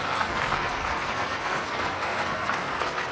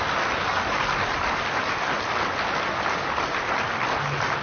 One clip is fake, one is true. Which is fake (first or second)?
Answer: first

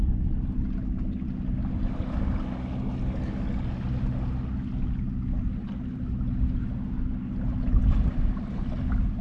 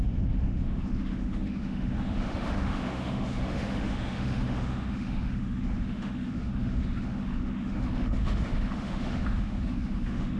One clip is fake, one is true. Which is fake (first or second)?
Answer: second